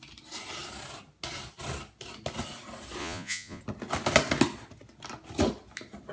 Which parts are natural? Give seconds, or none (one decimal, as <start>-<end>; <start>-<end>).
0.0-3.0; 3.6-6.1